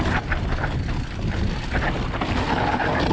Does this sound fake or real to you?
real